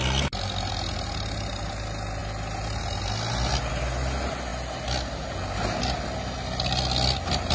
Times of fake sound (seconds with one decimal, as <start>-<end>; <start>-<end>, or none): none